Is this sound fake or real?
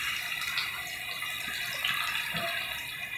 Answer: real